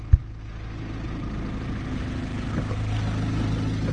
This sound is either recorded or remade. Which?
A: recorded